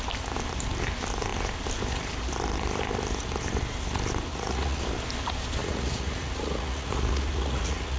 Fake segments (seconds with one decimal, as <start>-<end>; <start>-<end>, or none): 4.3-4.8; 5.6-8.0